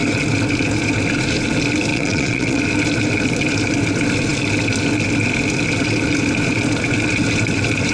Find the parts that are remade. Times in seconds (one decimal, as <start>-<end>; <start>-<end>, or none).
1.9-2.6